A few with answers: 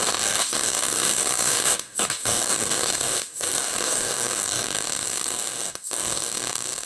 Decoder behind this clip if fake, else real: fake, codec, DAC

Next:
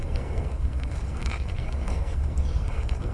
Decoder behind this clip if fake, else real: fake, codec, SNAC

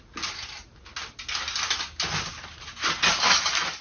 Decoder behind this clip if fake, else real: real